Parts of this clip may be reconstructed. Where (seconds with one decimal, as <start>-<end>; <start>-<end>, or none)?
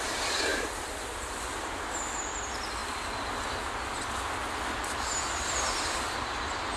none